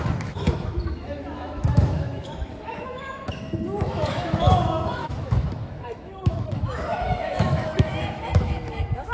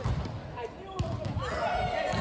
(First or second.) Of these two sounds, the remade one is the first